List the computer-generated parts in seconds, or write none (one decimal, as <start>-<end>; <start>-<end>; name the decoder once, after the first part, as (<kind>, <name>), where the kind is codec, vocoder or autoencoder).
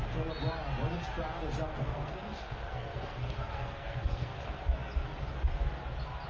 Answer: 1.7-4.6 (codec, SNAC)